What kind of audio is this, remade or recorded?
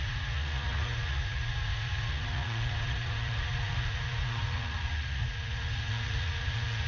remade